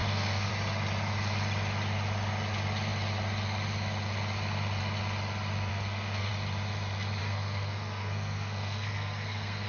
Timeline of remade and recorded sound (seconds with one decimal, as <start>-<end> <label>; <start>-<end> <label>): 0.0-0.5 remade; 0.5-5.7 recorded; 5.7-6.3 remade; 6.3-7.2 recorded; 7.2-9.7 remade

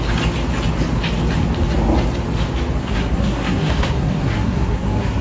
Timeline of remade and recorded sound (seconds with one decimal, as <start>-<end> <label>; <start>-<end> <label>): 0.0-2.8 recorded; 2.8-5.2 remade

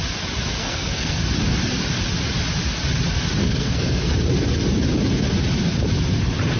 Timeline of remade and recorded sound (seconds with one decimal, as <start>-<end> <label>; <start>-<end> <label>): 0.0-0.6 recorded; 0.6-1.2 remade; 1.2-3.4 recorded; 3.4-4.1 remade; 4.1-6.6 recorded

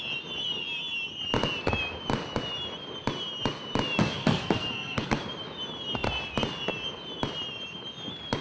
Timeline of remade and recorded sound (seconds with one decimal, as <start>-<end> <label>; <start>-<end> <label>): 0.0-4.2 recorded; 4.2-5.2 remade; 5.2-8.4 recorded

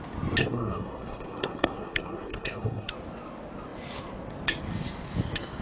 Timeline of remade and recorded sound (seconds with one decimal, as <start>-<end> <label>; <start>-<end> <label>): 0.0-0.4 recorded; 0.4-2.9 remade; 2.9-5.6 recorded

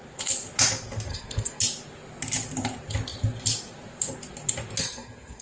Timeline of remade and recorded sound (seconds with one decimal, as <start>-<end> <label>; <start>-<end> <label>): 0.0-1.1 recorded; 1.1-1.6 remade; 1.6-4.8 recorded; 4.8-5.4 remade

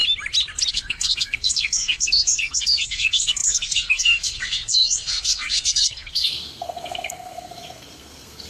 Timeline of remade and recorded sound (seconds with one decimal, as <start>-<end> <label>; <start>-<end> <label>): 0.0-0.7 recorded; 0.7-8.5 remade

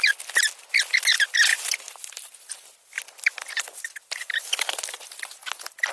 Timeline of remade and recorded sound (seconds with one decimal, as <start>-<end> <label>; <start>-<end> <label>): 0.0-5.9 recorded